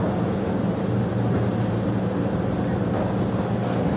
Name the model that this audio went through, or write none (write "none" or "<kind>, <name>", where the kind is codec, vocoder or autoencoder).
none